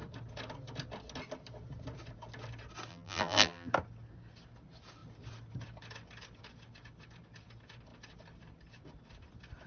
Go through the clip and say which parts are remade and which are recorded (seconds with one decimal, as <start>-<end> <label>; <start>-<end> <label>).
0.0-2.9 recorded; 2.9-3.7 remade; 3.7-9.7 recorded